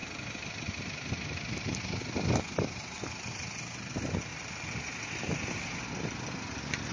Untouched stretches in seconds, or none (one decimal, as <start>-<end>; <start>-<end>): 0.0-6.9